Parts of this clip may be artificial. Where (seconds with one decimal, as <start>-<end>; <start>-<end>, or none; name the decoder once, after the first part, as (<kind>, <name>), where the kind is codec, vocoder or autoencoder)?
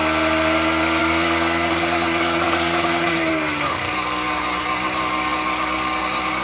1.0-6.4 (codec, DAC)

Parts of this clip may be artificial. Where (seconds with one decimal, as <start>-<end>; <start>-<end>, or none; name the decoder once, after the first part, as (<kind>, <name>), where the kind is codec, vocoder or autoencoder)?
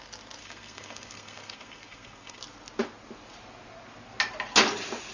0.4-2.4 (codec, SNAC)